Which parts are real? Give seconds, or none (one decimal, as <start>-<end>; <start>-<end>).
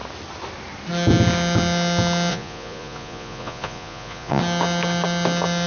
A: 0.0-2.3; 4.4-5.7